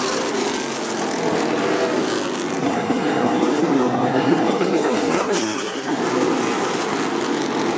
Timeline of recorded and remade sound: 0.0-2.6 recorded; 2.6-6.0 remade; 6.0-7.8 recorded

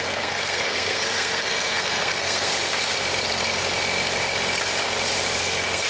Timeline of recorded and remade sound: 0.0-2.5 remade; 2.5-5.4 recorded; 5.4-5.9 remade

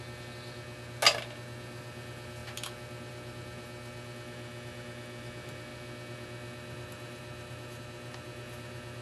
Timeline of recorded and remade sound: 0.0-9.0 recorded

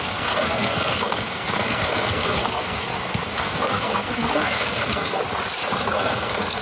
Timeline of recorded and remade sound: 0.0-5.2 remade; 5.2-5.8 recorded; 5.8-6.6 remade

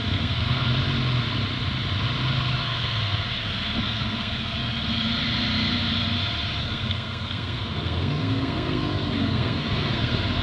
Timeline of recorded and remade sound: 0.0-0.7 remade; 0.7-2.6 recorded; 2.6-4.6 remade; 4.6-6.6 recorded; 6.6-10.4 remade